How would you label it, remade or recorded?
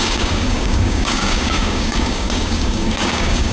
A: remade